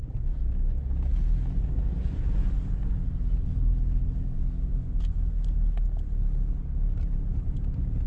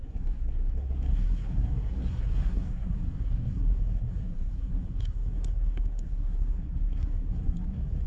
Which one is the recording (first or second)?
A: first